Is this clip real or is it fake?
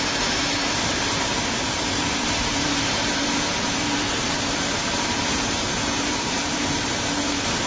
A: fake